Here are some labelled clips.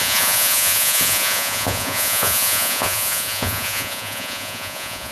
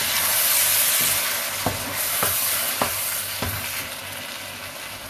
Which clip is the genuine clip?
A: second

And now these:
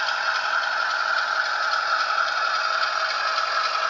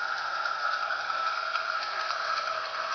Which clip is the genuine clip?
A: first